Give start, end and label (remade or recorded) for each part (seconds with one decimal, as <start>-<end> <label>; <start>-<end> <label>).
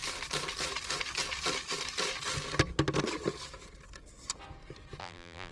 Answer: 0.0-5.0 recorded; 5.0-5.5 remade